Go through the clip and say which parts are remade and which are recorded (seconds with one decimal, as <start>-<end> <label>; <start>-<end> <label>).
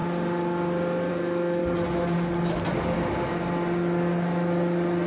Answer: 0.0-1.1 recorded; 1.1-1.6 remade; 1.6-5.1 recorded